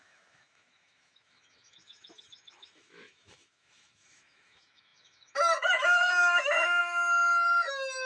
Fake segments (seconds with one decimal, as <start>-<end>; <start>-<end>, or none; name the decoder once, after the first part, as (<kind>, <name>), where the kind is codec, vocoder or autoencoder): 0.0-8.1 (autoencoder, DAC-VAE)